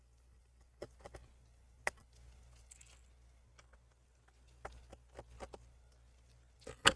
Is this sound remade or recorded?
recorded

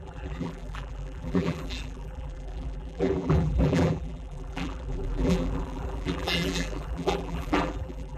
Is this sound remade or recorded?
remade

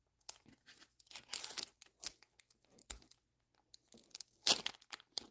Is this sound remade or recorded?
recorded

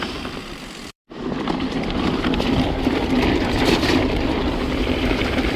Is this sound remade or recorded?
remade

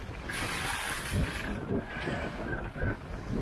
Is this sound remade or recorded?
recorded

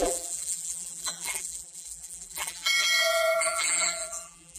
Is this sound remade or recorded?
remade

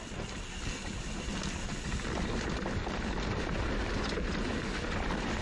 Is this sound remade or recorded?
recorded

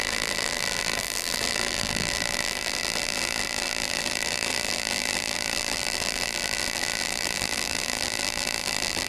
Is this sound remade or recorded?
remade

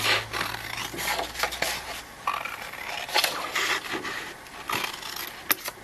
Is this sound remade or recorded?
recorded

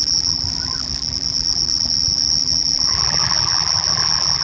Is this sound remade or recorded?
remade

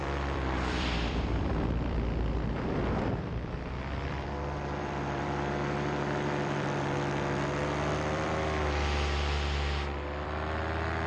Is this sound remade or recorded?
remade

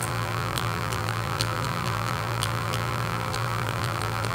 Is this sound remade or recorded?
remade